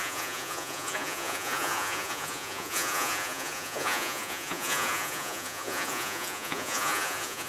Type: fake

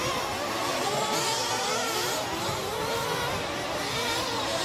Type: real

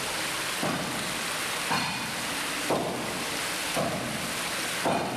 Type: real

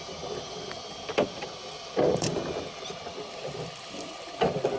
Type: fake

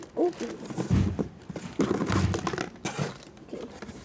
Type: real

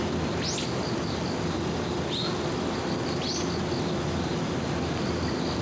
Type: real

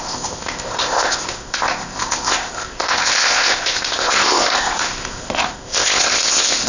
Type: fake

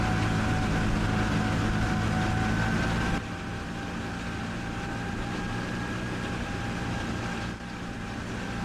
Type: real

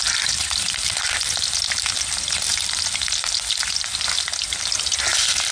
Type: real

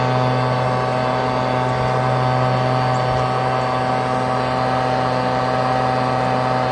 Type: real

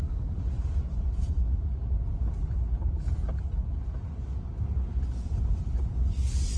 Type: real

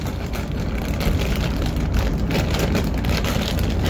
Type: fake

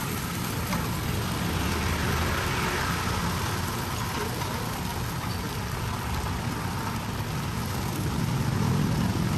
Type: real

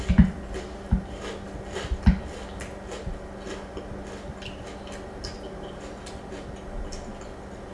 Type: real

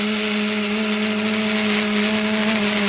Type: real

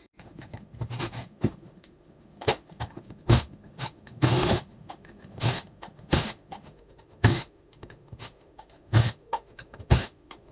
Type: fake